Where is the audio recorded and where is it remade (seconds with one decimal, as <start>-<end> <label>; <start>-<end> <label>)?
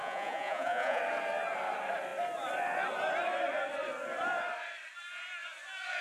0.0-1.0 remade; 1.0-6.0 recorded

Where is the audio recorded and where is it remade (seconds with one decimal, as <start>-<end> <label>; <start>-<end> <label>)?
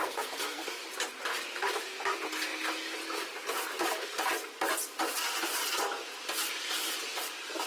0.0-0.8 remade; 0.8-7.7 recorded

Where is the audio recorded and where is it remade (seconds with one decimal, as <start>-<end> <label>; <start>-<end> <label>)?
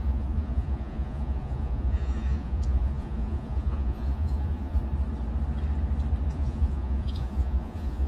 0.0-4.8 remade; 4.8-6.3 recorded; 6.3-8.1 remade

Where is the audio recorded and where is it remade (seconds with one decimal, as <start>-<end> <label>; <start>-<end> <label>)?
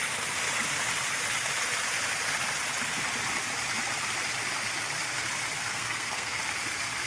0.0-5.6 recorded; 5.6-6.4 remade; 6.4-7.1 recorded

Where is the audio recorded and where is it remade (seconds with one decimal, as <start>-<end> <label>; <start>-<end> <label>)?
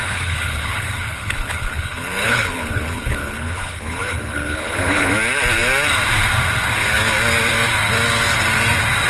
0.0-5.1 remade; 5.1-9.1 recorded